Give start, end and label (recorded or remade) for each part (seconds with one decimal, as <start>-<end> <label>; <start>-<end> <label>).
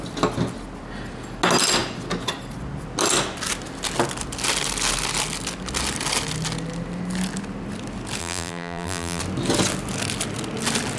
0.0-8.2 recorded; 8.2-9.2 remade; 9.2-11.0 recorded